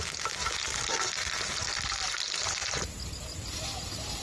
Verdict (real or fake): real